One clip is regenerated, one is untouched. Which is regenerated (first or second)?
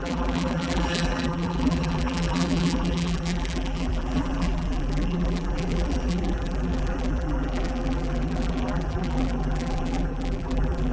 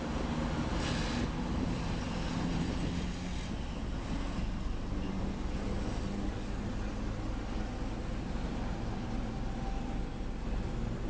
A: first